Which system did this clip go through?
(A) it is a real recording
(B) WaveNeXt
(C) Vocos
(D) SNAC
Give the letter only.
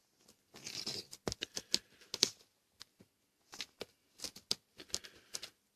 A